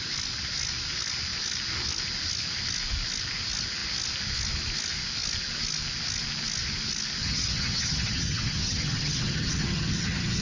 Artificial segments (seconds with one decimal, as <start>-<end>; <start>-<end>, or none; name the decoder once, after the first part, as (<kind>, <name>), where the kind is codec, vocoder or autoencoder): 7.2-10.4 (vocoder, HiFi-GAN)